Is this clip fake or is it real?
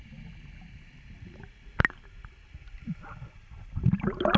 real